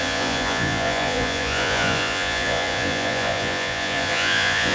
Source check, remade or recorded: remade